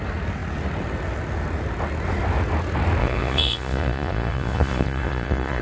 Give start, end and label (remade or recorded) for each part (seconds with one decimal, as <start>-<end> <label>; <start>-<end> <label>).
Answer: 0.0-3.0 recorded; 3.0-5.6 remade